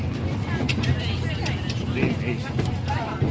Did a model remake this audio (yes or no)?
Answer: no